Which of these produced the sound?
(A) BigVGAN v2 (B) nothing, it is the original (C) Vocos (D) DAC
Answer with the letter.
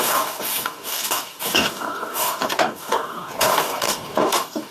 D